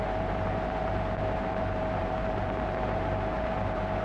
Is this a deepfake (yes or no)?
yes